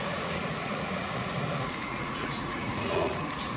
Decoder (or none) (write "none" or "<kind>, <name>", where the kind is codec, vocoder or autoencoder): vocoder, Vocos